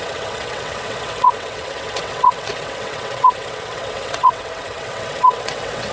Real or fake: fake